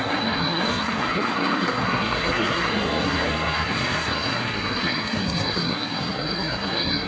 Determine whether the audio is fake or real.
fake